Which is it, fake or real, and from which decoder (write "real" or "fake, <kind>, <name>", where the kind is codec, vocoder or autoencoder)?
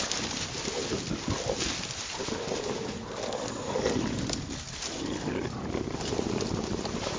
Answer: real